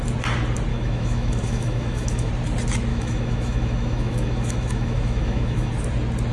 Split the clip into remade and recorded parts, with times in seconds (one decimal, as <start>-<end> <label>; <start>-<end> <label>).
0.0-0.7 recorded; 0.7-2.3 remade; 2.3-2.9 recorded; 2.9-5.7 remade; 5.7-6.3 recorded